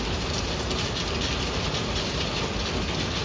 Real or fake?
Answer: real